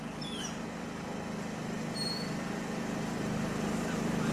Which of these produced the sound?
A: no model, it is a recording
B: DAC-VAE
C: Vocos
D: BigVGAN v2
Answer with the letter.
D